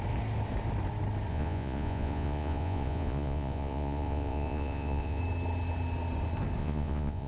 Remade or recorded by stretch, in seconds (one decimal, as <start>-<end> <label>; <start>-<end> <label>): 0.0-1.3 recorded; 1.3-5.2 remade; 5.2-6.6 recorded; 6.6-7.3 remade